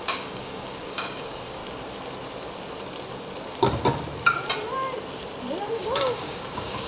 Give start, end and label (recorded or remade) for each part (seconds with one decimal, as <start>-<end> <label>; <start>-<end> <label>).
0.0-1.6 remade; 1.6-5.7 recorded; 5.7-6.9 remade